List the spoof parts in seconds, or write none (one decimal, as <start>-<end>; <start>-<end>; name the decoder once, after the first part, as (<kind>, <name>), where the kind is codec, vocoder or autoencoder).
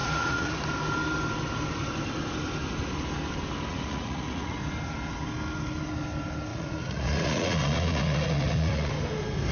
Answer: 0.0-0.5 (vocoder, Vocos); 3.7-4.5; 6.5-8.9